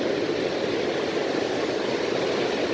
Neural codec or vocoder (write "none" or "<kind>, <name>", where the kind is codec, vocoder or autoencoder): none